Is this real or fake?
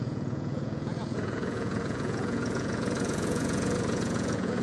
fake